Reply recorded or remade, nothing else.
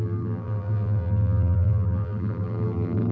remade